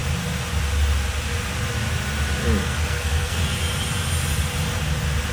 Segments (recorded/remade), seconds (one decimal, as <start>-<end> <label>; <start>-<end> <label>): 0.0-2.6 recorded; 2.6-3.4 remade; 3.4-5.3 recorded